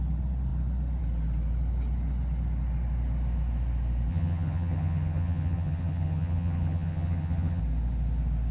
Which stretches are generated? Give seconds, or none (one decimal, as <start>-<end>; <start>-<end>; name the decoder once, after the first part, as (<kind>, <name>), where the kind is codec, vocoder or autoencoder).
4.1-7.6 (vocoder, HiFi-GAN)